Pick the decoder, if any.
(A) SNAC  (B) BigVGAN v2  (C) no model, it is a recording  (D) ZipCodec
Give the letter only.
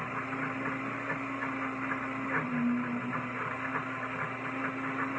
C